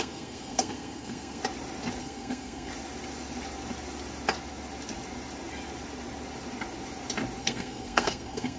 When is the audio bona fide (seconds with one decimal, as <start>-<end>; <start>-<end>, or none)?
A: 1.4-2.0; 2.7-7.4